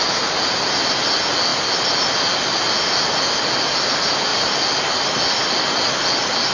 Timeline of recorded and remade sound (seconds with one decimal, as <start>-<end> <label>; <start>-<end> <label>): 0.0-6.5 recorded